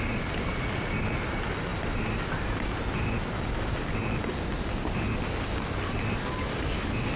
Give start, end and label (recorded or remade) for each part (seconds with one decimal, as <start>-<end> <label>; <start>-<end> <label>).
0.0-7.2 recorded